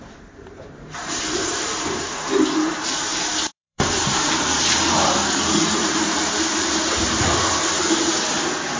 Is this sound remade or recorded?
remade